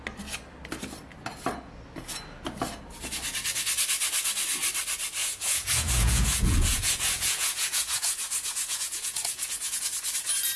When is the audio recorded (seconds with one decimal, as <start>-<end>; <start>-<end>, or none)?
0.0-5.2; 9.8-10.6